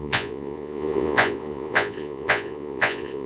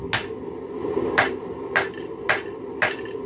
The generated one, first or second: first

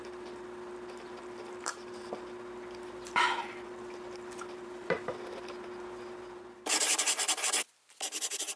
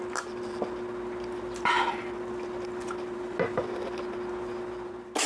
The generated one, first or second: first